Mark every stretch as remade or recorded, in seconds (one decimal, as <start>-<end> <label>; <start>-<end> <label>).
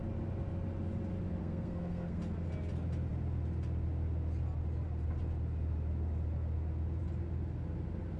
0.0-1.4 recorded; 1.4-2.2 remade; 2.2-8.2 recorded